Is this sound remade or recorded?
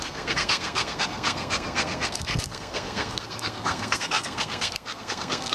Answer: remade